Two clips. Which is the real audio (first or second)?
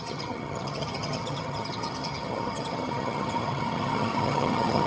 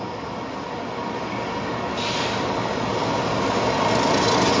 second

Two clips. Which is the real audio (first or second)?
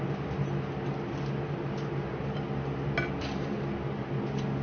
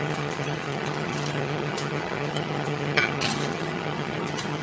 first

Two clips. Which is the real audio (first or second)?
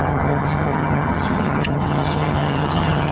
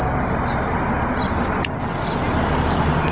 second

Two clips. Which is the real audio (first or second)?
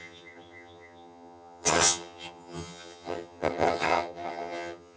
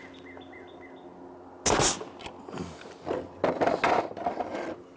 second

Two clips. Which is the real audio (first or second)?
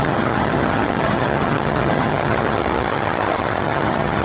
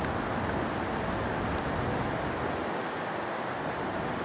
second